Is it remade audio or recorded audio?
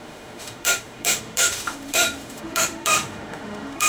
remade